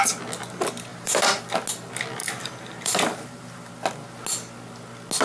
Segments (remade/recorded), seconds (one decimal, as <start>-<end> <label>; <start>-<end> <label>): 0.0-0.9 recorded; 0.9-1.4 remade; 1.4-2.2 recorded; 2.2-3.7 remade; 3.7-5.2 recorded